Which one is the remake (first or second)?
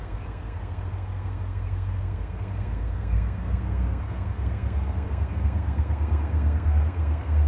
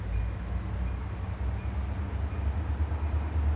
first